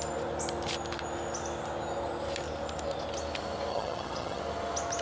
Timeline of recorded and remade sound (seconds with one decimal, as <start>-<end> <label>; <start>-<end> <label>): 0.0-3.7 recorded; 3.7-4.4 remade; 4.4-5.0 recorded